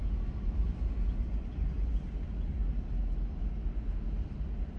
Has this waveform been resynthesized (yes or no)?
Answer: no